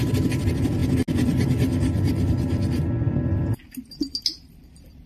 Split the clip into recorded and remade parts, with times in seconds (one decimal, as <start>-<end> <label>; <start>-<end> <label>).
0.0-5.1 recorded